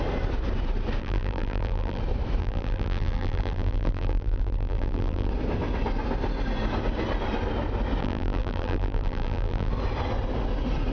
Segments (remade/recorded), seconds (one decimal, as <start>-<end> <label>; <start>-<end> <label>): 0.0-1.0 recorded; 1.0-2.0 remade; 2.0-2.4 recorded; 2.4-5.3 remade; 5.3-8.0 recorded; 8.0-9.7 remade; 9.7-10.9 recorded